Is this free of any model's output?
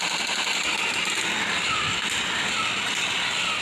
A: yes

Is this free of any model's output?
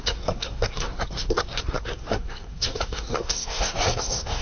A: no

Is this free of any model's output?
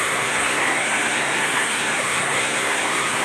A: no